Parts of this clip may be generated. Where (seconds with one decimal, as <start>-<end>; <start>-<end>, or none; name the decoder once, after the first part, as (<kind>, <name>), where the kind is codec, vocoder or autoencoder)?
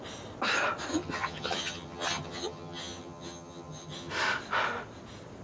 0.9-4.1 (vocoder, HiFi-GAN)